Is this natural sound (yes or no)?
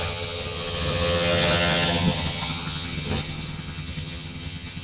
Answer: no